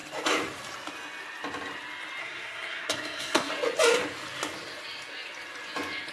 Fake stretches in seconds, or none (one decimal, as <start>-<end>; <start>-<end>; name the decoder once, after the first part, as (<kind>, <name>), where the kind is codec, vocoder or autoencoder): 2.2-3.5 (codec, SNAC)